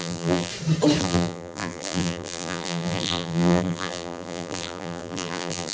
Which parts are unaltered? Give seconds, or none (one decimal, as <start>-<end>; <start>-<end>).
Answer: 0.5-1.0